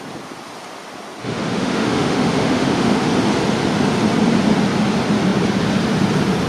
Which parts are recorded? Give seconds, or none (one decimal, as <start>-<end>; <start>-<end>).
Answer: 0.0-1.2; 3.1-6.5